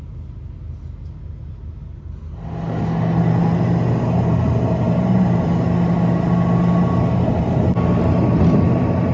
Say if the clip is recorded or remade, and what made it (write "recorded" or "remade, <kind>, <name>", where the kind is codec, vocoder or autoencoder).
recorded